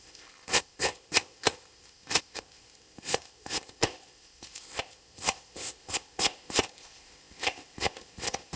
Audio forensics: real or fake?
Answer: fake